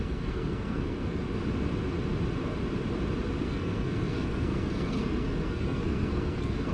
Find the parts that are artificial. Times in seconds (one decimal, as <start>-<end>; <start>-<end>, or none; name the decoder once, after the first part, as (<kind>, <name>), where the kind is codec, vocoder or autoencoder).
0.0-1.2 (codec, SNAC); 3.4-6.7